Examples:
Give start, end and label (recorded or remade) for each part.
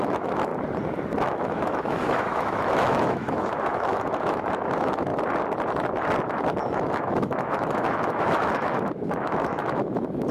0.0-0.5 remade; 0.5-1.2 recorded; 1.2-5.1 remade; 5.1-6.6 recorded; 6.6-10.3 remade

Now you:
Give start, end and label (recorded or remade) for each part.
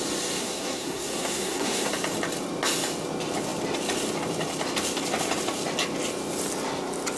0.0-0.4 recorded; 0.4-1.9 remade; 1.9-7.2 recorded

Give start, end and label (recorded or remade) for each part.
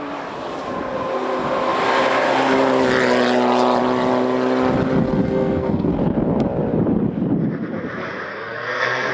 0.0-5.2 recorded; 5.2-5.9 remade; 5.9-8.3 recorded; 8.3-9.1 remade